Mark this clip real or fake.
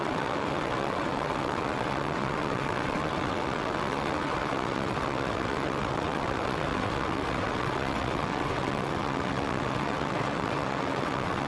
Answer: fake